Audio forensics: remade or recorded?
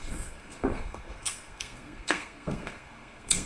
remade